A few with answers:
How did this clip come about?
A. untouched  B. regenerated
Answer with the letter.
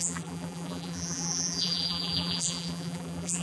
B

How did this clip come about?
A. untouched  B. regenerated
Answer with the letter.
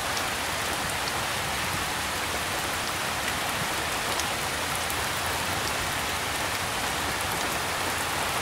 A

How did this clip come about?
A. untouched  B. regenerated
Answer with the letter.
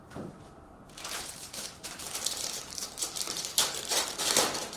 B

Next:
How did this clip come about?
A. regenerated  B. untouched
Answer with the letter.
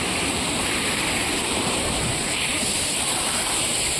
A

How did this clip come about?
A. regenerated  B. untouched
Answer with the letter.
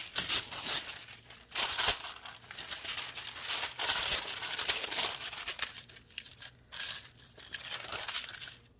B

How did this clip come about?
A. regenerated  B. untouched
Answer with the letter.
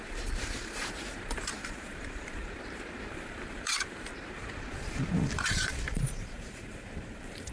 A